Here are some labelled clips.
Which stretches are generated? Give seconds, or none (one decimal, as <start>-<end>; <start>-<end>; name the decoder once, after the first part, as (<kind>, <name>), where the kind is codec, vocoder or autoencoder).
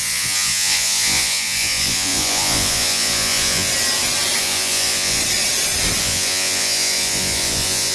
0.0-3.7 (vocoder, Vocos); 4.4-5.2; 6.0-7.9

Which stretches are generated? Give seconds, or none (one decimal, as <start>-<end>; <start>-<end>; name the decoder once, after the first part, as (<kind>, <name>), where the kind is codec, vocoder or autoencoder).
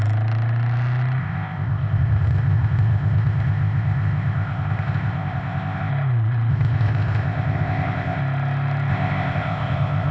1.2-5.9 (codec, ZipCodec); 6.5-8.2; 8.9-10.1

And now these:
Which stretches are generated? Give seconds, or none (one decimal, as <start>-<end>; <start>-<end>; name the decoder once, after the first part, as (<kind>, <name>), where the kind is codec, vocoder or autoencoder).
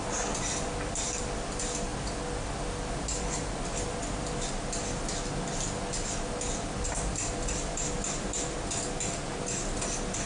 none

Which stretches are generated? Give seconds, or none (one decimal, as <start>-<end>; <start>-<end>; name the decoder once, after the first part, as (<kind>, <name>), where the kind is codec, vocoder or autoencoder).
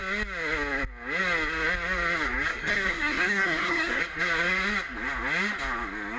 2.5-4.0 (codec, SNAC)